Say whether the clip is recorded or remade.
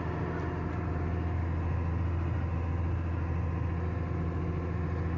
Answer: recorded